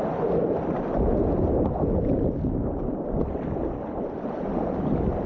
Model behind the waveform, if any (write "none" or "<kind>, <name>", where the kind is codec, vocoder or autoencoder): none